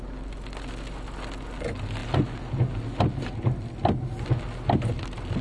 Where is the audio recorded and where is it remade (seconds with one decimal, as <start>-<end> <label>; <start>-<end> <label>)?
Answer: 0.0-5.4 recorded